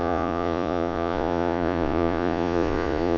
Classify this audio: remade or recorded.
remade